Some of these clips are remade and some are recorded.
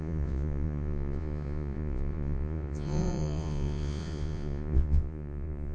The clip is remade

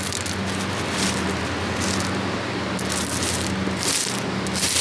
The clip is recorded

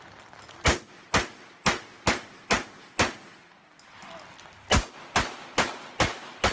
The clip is recorded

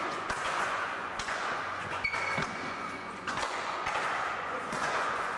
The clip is remade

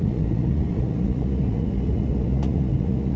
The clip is remade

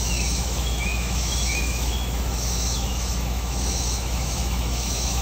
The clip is remade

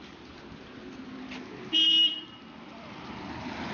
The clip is recorded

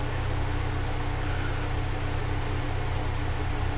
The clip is recorded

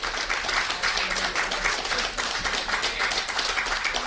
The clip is recorded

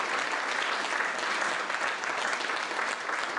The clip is recorded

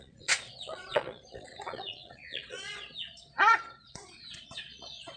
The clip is remade